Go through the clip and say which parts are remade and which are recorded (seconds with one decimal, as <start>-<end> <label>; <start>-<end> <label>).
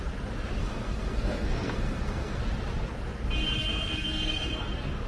0.0-0.6 recorded; 0.6-2.4 remade; 2.4-3.6 recorded; 3.6-4.5 remade; 4.5-5.1 recorded